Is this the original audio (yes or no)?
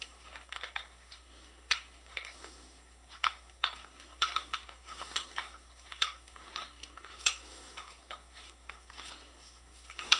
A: no